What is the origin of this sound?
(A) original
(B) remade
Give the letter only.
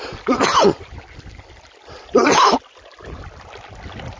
A